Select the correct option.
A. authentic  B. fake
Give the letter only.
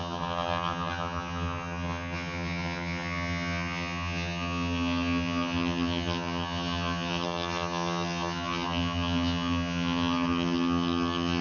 B